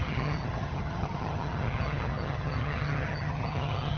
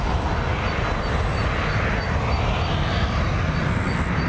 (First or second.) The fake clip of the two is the first